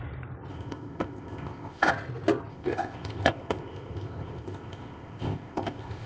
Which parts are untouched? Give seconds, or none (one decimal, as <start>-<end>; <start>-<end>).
0.0-0.5; 1.9-2.5